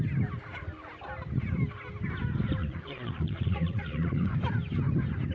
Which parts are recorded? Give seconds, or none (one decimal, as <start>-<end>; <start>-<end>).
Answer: 0.0-2.6; 4.3-5.3